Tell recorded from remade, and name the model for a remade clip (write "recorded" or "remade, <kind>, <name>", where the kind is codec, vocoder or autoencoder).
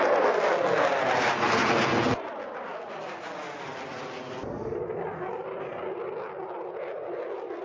recorded